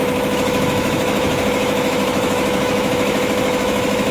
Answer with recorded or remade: remade